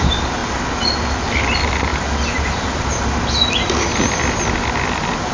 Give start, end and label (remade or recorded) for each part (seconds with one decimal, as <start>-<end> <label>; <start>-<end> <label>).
0.0-5.3 recorded